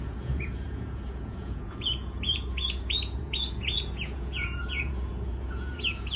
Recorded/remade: remade